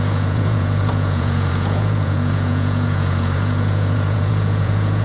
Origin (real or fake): fake